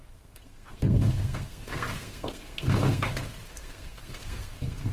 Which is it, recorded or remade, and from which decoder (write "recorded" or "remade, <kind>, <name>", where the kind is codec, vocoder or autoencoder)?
remade, codec, SNAC